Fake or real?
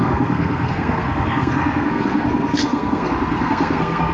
fake